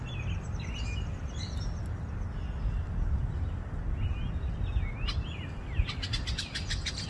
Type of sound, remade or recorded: recorded